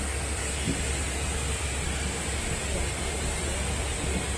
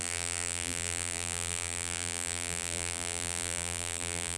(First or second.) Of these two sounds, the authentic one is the first